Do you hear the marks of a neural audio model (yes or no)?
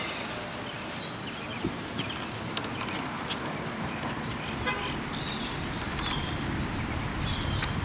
no